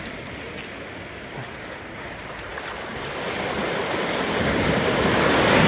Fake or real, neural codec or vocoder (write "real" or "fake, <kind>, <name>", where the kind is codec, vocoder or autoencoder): real